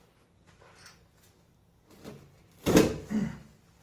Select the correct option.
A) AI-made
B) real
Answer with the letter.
B